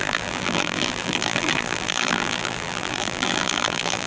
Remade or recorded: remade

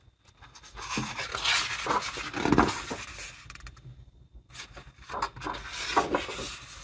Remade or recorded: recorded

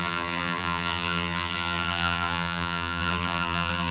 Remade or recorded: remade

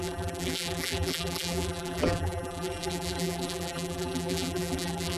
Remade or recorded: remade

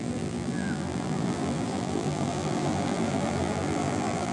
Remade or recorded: remade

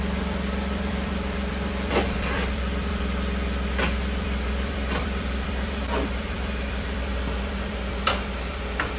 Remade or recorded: remade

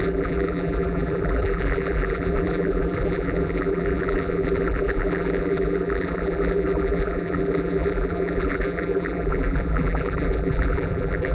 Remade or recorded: remade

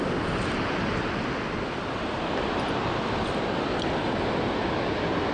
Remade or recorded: recorded